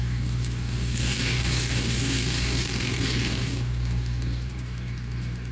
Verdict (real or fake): fake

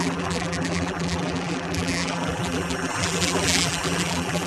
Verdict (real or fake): fake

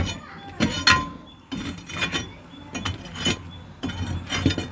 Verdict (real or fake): real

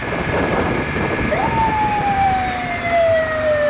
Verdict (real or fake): fake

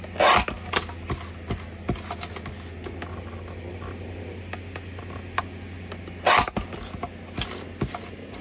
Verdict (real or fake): real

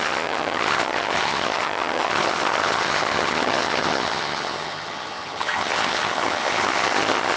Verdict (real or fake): fake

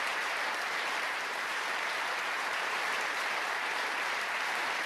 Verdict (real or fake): fake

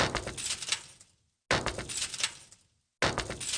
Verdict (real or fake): real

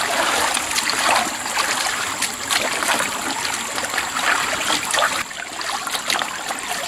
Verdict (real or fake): real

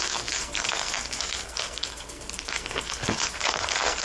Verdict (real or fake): fake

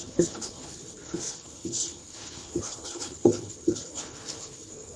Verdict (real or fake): fake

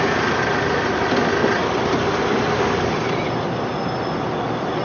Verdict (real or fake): real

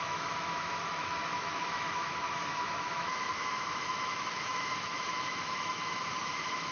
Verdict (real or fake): fake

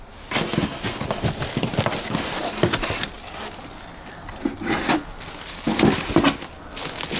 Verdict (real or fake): real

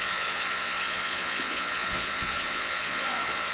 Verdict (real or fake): fake